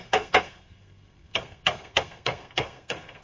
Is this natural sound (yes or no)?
no